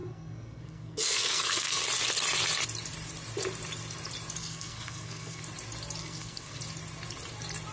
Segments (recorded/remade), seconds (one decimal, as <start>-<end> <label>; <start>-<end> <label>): 0.0-1.8 remade; 1.8-4.4 recorded; 4.4-5.4 remade; 5.4-6.0 recorded; 6.0-6.6 remade; 6.6-7.7 recorded